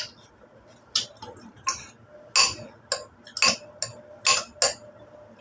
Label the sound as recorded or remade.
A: recorded